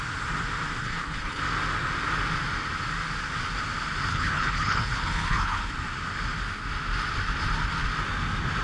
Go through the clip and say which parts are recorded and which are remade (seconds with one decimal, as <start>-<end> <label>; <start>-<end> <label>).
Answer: 0.0-0.8 recorded; 0.8-1.4 remade; 1.4-4.1 recorded; 4.1-5.7 remade; 5.7-8.6 recorded